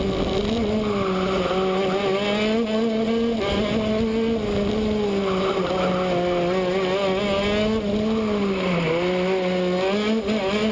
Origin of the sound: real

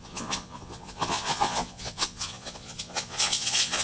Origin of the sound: fake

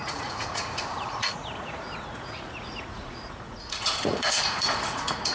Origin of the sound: fake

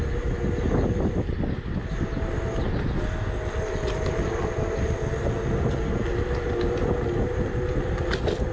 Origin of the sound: real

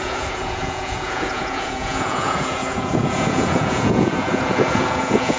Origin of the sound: fake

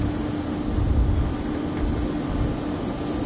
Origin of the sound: real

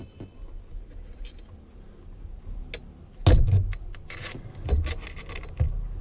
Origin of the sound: real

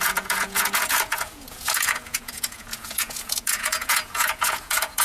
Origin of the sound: fake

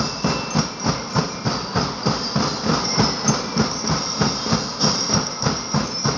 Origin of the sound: real